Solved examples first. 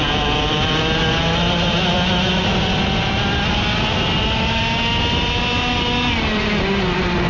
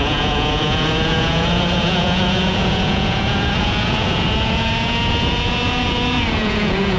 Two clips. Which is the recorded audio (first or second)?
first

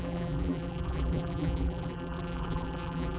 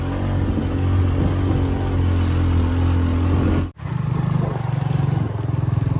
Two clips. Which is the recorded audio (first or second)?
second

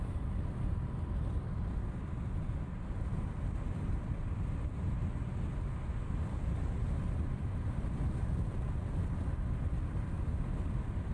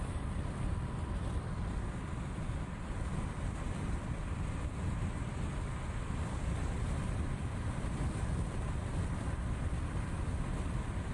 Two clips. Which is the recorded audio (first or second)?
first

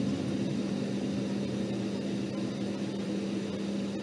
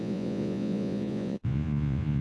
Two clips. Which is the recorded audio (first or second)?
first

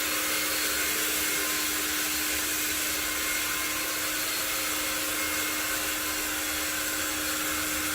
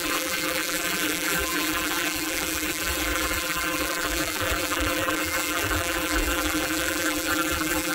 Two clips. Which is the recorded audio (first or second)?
first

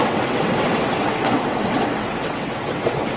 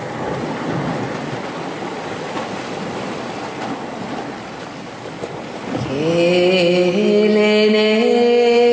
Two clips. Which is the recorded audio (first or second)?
second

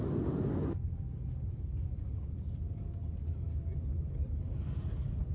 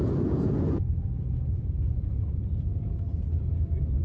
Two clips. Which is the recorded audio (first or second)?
first